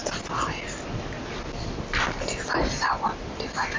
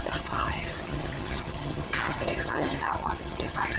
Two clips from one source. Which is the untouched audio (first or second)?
first